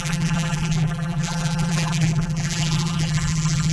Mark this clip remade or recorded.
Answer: remade